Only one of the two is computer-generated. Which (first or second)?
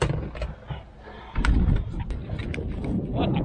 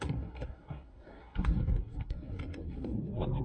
second